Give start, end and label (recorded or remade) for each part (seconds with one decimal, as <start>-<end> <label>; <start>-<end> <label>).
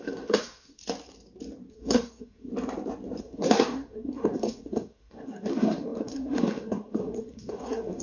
0.0-0.8 remade; 0.8-1.7 recorded; 1.7-2.5 remade; 2.5-3.2 recorded; 3.2-8.0 remade